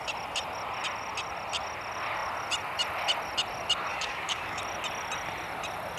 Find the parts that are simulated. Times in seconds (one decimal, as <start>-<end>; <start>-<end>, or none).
3.9-4.6